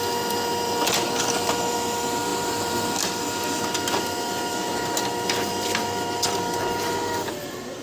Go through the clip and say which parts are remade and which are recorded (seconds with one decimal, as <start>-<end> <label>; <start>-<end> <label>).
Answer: 0.0-2.3 recorded; 2.3-3.6 remade; 3.6-7.8 recorded